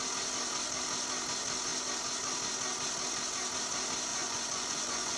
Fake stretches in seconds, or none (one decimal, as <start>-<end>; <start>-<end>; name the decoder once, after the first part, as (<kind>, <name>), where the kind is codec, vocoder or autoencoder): 4.1-5.2 (vocoder, Vocos)